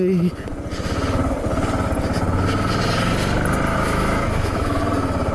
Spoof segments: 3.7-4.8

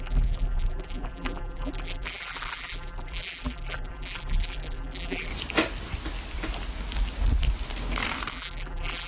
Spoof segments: 0.0-5.3; 8.3-9.1

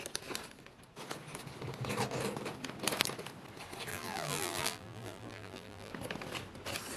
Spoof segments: 3.9-5.9

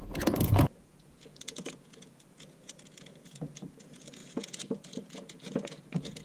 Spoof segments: 0.0-6.2

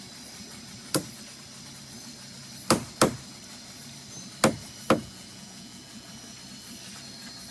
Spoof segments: 5.0-6.1

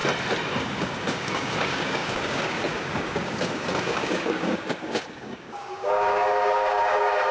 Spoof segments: 0.6-7.3